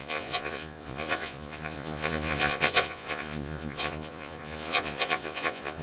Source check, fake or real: fake